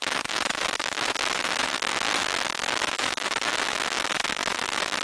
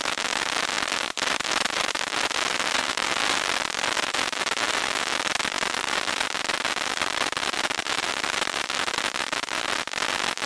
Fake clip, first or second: first